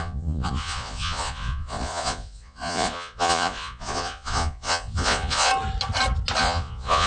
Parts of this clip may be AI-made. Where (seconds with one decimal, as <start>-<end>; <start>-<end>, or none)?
0.0-5.5; 6.4-7.1